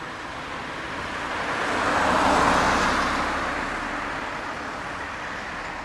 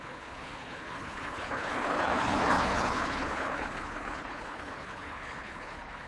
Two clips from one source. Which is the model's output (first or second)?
second